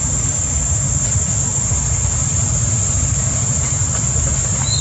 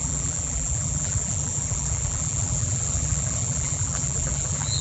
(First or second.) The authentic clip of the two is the first